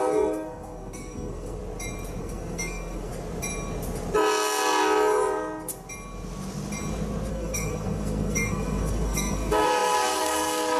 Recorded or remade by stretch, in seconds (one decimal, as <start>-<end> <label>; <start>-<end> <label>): 0.0-1.6 remade; 1.6-2.2 recorded; 2.2-3.1 remade; 3.1-7.3 recorded; 7.3-10.8 remade